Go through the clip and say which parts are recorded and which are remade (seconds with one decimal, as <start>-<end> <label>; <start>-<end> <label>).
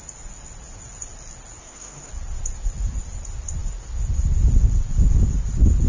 0.0-1.6 recorded; 1.6-2.1 remade; 2.1-5.9 recorded